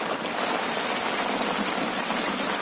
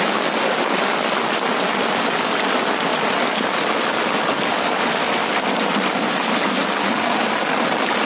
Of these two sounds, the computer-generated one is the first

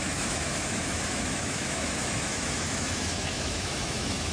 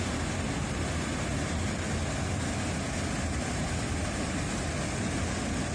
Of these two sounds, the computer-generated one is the first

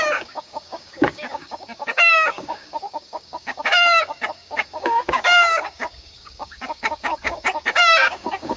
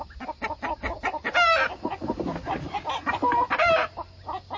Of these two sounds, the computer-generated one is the first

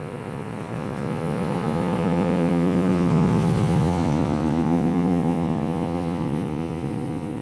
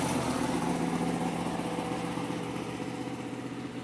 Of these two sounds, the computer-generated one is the first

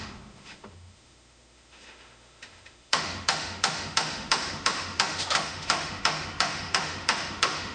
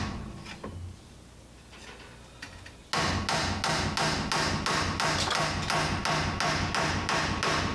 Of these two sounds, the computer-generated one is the first